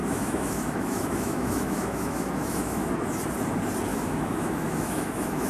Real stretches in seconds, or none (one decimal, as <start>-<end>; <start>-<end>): 2.9-3.9